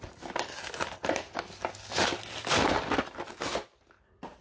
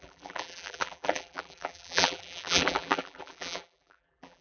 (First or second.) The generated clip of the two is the second